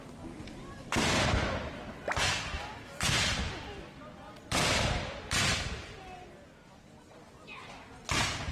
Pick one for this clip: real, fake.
real